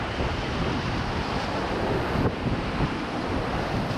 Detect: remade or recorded recorded